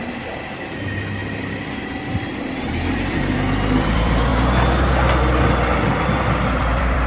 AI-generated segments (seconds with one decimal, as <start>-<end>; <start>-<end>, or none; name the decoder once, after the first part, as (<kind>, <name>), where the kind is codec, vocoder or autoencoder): 0.0-1.2 (vocoder, BigVGAN v2); 2.1-4.3; 6.2-7.1